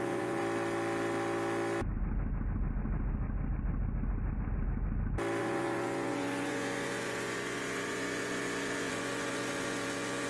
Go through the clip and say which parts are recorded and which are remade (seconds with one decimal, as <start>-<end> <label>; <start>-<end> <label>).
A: 0.0-0.4 remade; 0.4-5.4 recorded; 5.4-10.3 remade